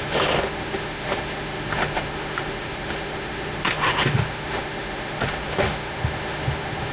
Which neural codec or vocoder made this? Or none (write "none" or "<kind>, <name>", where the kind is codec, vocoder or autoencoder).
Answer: autoencoder, DAC-VAE